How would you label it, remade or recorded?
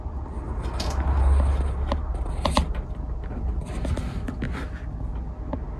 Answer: recorded